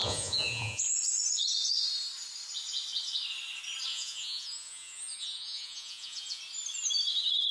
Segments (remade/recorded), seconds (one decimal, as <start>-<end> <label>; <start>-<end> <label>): 0.0-0.8 remade; 0.8-3.9 recorded; 3.9-6.4 remade; 6.4-7.5 recorded